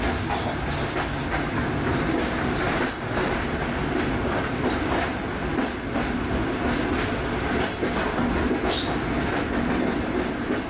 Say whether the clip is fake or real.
real